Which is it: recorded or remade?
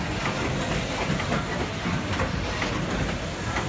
recorded